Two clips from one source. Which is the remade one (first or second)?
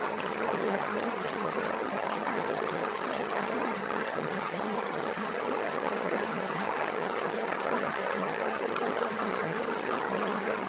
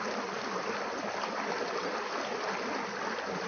first